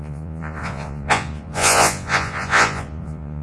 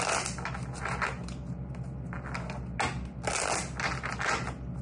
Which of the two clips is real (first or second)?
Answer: second